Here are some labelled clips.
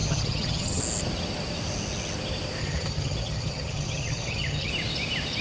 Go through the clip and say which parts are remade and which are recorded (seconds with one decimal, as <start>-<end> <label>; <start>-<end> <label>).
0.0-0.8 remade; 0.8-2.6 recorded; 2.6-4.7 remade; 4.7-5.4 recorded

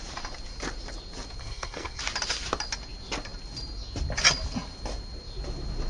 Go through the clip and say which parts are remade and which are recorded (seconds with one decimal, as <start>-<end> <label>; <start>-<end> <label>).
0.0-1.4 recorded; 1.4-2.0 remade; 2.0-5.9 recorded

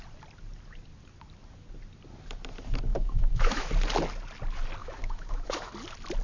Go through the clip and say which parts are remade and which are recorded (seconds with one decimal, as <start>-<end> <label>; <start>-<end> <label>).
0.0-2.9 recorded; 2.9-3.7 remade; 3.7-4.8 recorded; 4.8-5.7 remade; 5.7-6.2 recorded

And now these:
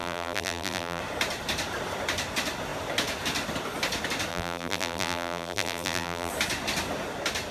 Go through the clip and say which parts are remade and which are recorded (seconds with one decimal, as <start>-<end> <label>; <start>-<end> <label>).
0.0-1.0 remade; 1.0-4.3 recorded; 4.3-6.3 remade; 6.3-7.5 recorded

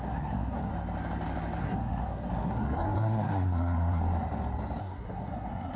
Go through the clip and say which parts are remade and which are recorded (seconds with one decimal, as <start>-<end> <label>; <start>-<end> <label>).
0.0-0.7 remade; 0.7-1.6 recorded; 1.6-4.0 remade; 4.0-4.8 recorded; 4.8-5.8 remade

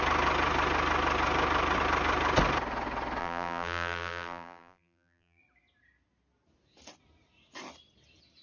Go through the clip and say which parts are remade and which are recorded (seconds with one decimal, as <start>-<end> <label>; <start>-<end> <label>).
0.0-3.2 recorded; 3.2-5.4 remade; 5.4-8.4 recorded